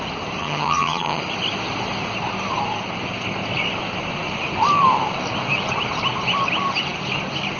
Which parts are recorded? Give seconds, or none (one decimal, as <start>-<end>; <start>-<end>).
0.0-0.4; 1.2-7.6